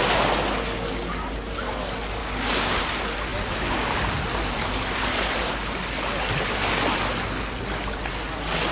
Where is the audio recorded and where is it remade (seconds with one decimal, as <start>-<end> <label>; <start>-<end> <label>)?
0.0-2.2 recorded; 2.2-2.8 remade; 2.8-8.7 recorded